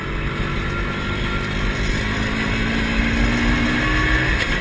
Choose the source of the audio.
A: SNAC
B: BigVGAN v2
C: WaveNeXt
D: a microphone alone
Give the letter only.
D